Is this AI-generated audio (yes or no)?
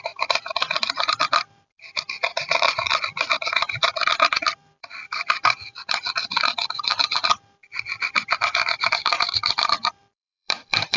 yes